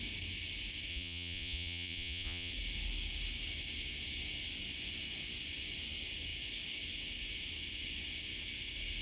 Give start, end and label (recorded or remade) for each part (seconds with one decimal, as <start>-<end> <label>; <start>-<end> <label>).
0.0-0.9 recorded; 0.9-2.5 remade; 2.5-9.0 recorded